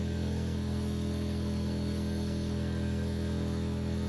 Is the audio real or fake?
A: fake